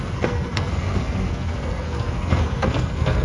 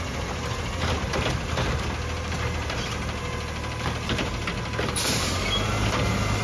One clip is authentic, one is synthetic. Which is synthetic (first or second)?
first